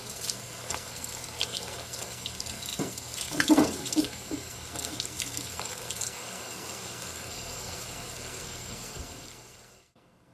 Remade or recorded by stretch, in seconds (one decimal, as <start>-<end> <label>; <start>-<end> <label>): 0.0-10.3 remade